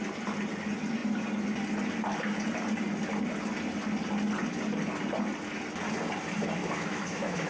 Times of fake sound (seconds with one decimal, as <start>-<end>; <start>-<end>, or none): 6.6-7.5